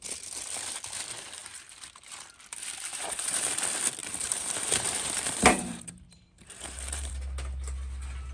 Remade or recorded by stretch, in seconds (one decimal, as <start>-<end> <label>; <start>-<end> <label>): 0.0-2.9 recorded; 2.9-3.6 remade; 3.6-4.0 recorded; 4.0-7.1 remade; 7.1-8.3 recorded